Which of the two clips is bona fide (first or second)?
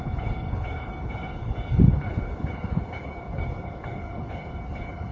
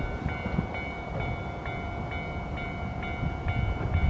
second